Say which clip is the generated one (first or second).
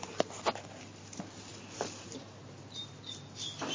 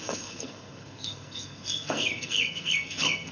second